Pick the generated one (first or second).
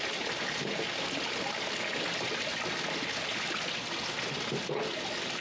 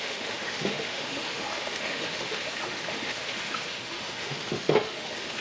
second